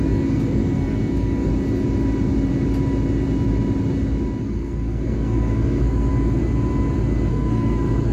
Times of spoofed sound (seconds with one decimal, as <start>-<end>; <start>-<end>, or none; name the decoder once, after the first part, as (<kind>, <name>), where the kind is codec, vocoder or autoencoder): 0.0-1.5 (codec, SNAC); 4.4-6.1; 7.3-8.1